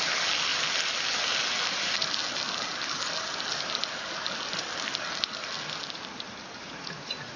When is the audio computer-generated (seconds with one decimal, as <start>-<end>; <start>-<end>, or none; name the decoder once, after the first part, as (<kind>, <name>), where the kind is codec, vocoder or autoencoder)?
6.6-7.4 (vocoder, Vocos)